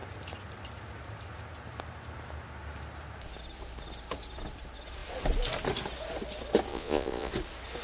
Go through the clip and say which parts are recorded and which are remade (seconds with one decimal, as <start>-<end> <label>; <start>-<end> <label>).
0.0-6.7 recorded; 6.7-7.3 remade; 7.3-7.8 recorded